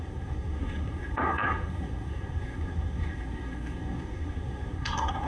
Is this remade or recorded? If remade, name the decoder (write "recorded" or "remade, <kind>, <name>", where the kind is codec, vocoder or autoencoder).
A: remade, codec, SNAC